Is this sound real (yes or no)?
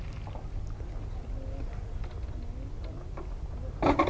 yes